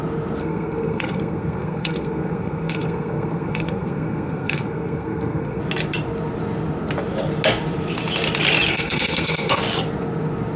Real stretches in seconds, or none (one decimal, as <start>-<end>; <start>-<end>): 0.0-0.4; 5.6-8.7; 9.6-10.6